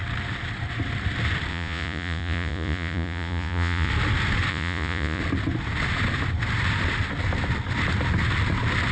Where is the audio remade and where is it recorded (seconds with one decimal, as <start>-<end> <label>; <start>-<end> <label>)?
0.0-1.5 recorded; 1.5-3.9 remade; 3.9-4.5 recorded; 4.5-5.2 remade; 5.2-8.9 recorded